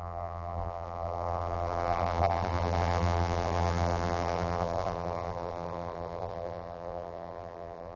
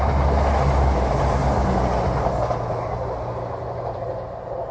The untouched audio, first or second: second